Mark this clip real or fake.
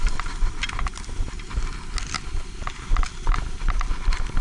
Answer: real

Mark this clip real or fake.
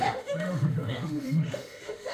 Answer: fake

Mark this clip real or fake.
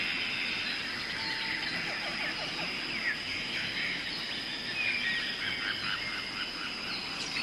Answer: real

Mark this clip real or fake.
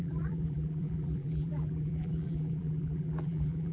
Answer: fake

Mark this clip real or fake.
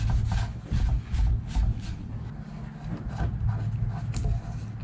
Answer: real